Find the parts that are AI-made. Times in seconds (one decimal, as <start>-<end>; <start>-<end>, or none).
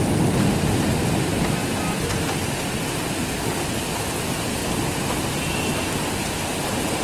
none